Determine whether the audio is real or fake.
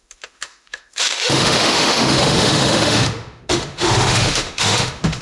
fake